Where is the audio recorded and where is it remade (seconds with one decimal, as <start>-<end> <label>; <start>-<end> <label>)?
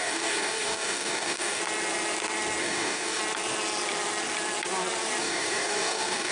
0.0-1.6 remade; 1.6-2.6 recorded; 2.6-3.2 remade; 3.2-5.2 recorded; 5.2-6.3 remade